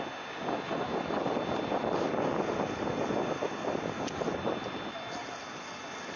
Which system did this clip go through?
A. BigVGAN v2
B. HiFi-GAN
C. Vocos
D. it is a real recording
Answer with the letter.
D